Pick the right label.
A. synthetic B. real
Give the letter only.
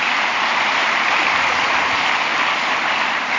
A